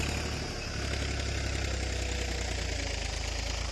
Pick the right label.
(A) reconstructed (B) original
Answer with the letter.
B